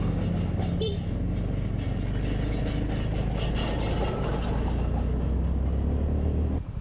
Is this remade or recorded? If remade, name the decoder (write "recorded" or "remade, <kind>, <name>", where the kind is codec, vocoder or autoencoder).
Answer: recorded